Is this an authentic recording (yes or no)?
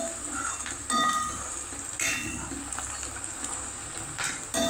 yes